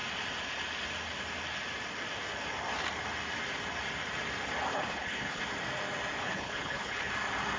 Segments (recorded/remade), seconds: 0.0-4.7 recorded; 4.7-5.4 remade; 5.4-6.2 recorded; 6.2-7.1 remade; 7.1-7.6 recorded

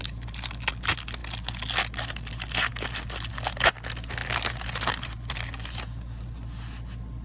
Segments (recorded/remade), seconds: 0.0-7.2 recorded

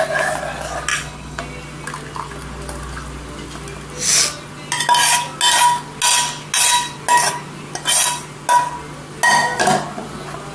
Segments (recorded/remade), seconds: 0.0-0.9 recorded; 0.9-1.4 remade; 1.4-10.5 recorded

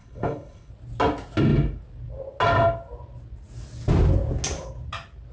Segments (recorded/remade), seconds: 0.0-0.7 remade; 0.7-5.3 recorded

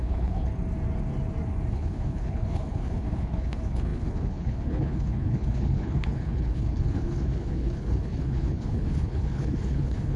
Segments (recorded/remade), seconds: 0.0-0.5 remade; 0.5-1.7 recorded; 1.7-10.2 remade

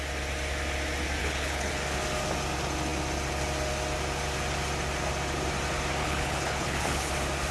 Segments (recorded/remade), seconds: 0.0-1.2 recorded; 1.2-1.7 remade; 1.7-6.0 recorded; 6.0-7.1 remade; 7.1-7.5 recorded

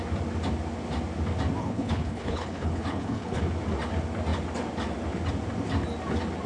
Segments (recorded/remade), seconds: 0.0-1.6 recorded; 1.6-3.4 remade; 3.4-6.5 recorded

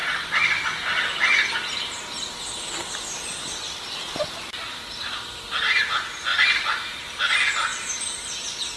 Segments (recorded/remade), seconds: 0.0-8.8 recorded